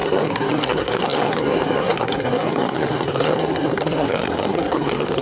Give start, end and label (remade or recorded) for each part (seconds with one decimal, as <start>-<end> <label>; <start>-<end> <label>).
0.0-5.2 remade